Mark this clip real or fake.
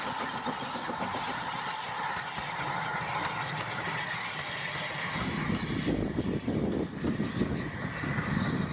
real